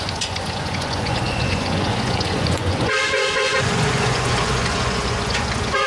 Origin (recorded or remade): remade